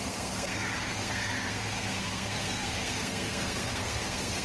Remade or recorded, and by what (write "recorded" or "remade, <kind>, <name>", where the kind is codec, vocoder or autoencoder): remade, codec, SNAC